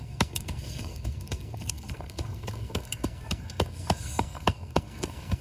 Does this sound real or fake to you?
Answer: fake